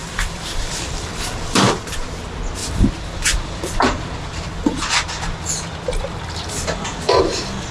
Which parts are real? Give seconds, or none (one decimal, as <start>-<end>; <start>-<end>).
2.2-2.6; 7.2-7.7